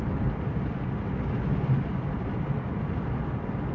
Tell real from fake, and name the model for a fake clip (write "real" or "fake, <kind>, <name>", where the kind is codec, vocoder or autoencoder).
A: real